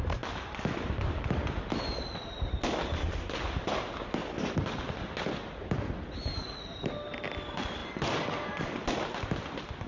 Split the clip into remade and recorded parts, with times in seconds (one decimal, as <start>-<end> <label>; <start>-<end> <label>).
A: 0.0-9.9 recorded